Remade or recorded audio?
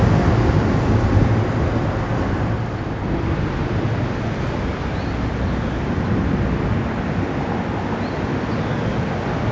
recorded